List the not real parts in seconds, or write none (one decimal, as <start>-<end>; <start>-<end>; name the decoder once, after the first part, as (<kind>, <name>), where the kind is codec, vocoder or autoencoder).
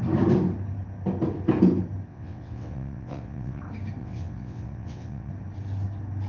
2.1-3.6 (vocoder, WaveNeXt); 4.0-5.3